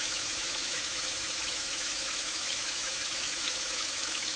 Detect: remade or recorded remade